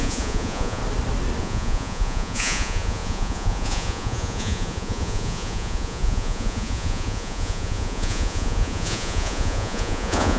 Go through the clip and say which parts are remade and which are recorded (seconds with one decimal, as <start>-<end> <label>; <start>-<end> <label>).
0.0-0.8 remade; 0.8-1.4 recorded; 1.4-10.4 remade